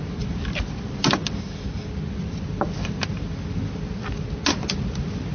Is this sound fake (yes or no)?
no